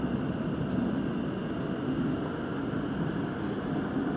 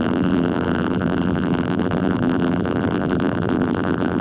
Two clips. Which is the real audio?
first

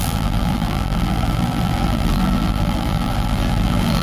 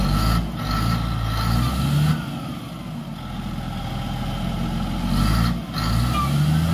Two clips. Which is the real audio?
second